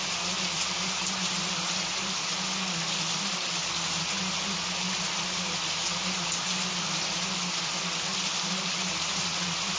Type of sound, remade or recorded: recorded